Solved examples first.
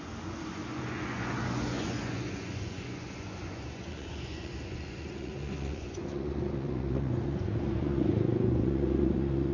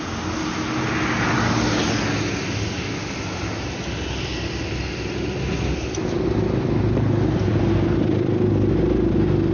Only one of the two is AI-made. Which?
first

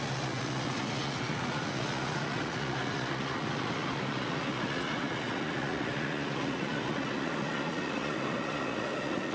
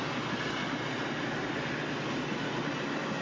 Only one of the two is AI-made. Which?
first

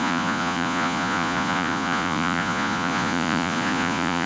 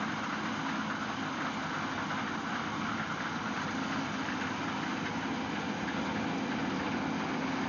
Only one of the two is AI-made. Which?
first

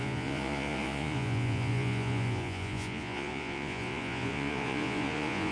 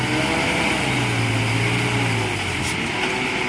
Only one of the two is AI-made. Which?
first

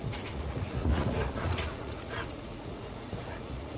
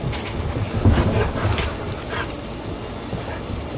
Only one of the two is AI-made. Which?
first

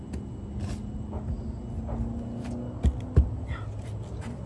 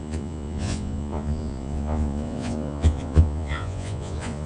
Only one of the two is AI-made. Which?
second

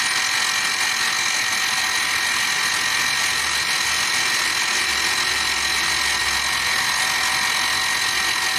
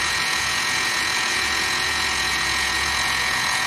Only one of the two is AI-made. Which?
second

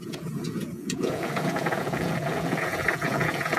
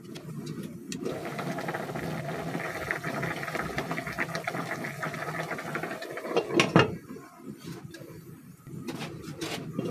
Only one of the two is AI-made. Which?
first